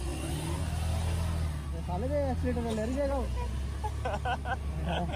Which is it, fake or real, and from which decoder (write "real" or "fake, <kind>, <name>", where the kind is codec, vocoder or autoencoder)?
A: real